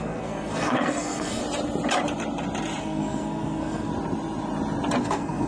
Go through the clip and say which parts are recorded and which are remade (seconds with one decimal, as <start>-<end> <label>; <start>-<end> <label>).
0.0-1.4 remade; 1.4-2.8 recorded; 2.8-3.9 remade; 3.9-5.0 recorded; 5.0-5.5 remade